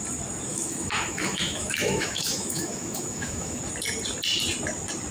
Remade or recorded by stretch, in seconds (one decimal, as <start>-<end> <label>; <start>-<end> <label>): 0.0-0.5 recorded; 0.5-3.6 remade; 3.6-5.1 recorded